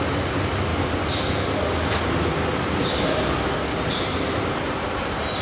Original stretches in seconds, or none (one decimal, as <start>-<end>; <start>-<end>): 0.0-5.4